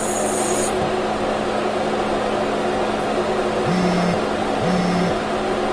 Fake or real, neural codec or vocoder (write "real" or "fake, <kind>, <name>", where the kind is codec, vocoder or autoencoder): real